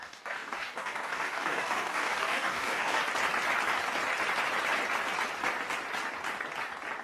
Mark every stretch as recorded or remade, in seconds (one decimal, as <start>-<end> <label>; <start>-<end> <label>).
0.0-3.0 remade; 3.0-7.0 recorded